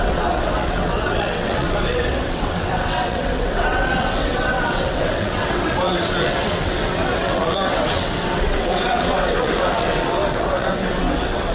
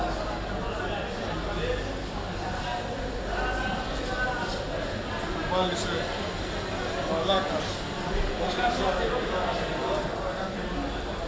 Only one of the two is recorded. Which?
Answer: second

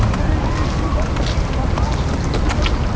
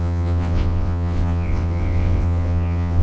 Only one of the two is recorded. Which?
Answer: first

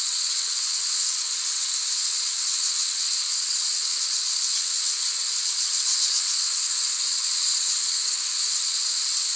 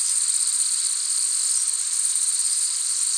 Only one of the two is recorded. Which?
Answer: second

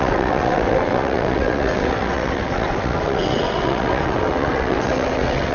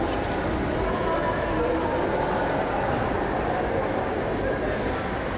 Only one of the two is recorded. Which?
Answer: second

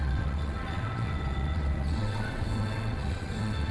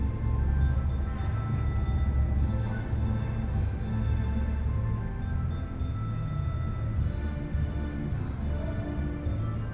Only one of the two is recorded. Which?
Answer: second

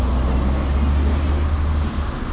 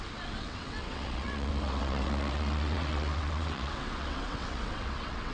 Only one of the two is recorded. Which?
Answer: first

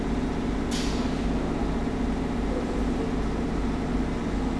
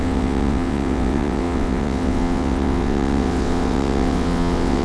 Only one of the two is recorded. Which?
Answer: first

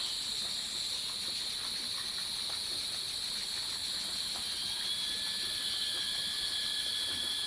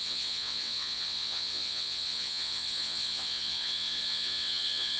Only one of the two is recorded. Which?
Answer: first